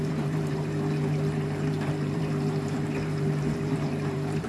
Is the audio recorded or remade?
remade